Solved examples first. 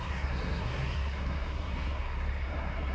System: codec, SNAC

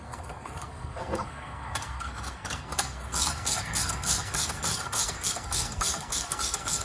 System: codec, SNAC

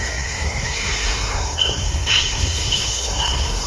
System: codec, SNAC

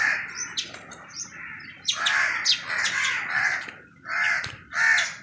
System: none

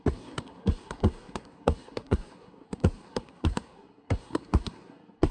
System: codec, SNAC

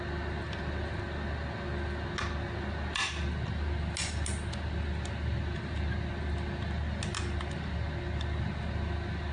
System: none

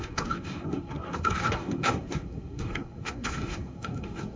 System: codec, SNAC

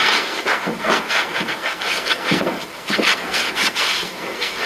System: codec, SNAC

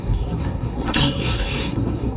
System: codec, SNAC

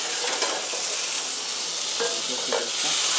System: none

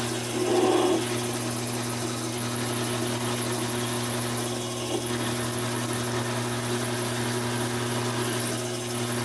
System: none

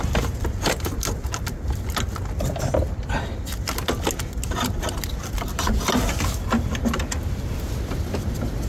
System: none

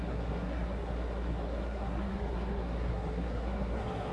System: codec, SNAC